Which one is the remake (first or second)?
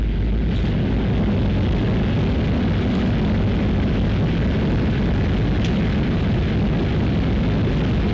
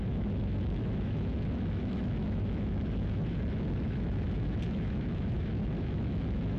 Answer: second